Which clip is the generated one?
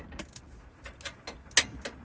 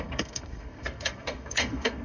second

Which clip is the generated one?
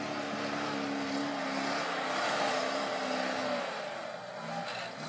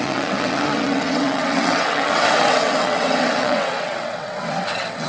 second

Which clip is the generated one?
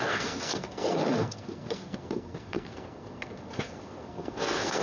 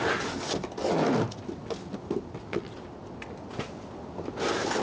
first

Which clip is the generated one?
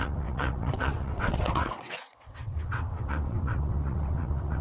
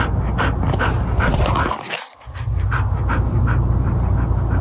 first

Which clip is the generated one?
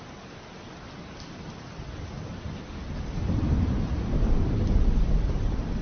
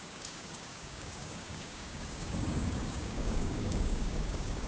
second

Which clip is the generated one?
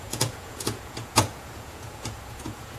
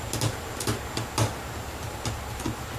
first